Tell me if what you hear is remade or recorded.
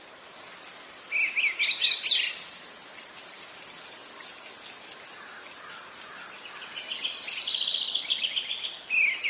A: recorded